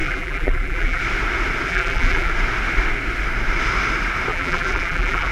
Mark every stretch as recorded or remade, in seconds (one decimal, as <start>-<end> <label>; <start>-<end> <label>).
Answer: 0.0-1.0 remade; 1.0-1.7 recorded; 1.7-2.3 remade; 2.3-4.3 recorded; 4.3-5.3 remade